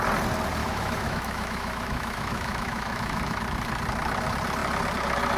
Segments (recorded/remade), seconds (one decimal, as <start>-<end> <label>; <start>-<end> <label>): 0.0-0.6 recorded; 0.6-3.4 remade; 3.4-5.4 recorded